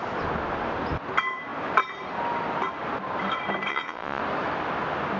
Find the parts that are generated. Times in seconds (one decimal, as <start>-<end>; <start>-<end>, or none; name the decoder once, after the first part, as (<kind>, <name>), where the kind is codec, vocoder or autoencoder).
3.7-4.2 (vocoder, Vocos)